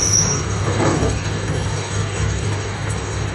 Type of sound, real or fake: fake